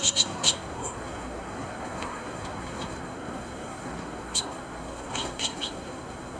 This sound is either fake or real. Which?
fake